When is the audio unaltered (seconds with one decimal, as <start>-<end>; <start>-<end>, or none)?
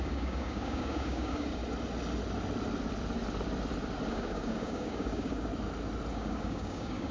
1.6-4.1; 5.5-6.1